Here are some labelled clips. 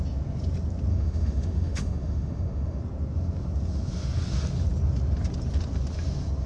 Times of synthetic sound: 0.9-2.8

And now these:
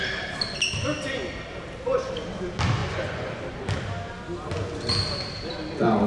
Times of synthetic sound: 2.8-3.4

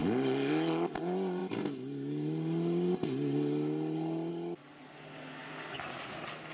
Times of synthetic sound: none

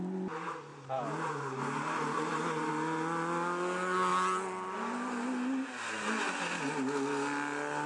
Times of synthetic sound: 0.7-2.7

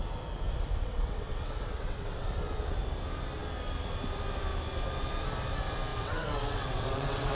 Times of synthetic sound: 0.8-2.3; 5.9-7.3

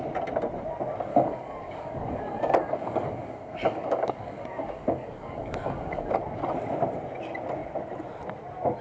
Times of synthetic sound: 1.1-6.2